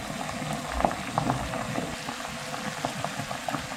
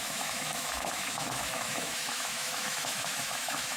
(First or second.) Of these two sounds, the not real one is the second